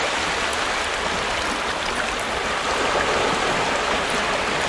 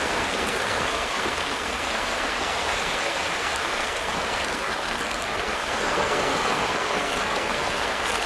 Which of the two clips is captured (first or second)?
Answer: first